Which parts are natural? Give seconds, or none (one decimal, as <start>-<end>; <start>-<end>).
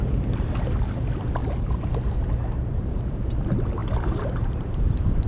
0.0-1.4; 1.9-3.8; 4.6-5.3